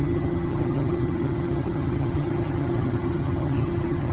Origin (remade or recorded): remade